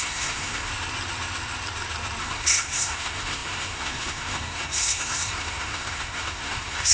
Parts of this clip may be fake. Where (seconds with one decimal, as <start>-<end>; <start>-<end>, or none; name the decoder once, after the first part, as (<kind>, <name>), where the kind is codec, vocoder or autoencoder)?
0.0-0.7 (codec, SNAC); 2.2-6.9